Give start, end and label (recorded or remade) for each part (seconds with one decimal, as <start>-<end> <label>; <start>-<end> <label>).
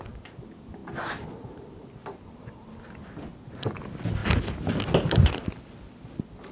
0.0-6.5 recorded